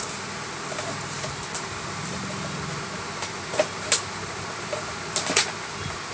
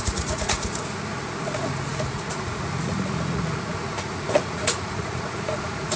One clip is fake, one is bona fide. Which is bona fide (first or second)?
first